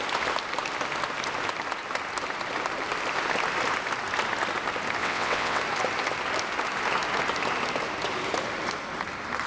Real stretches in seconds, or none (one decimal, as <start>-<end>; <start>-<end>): 0.0-5.0; 5.6-9.5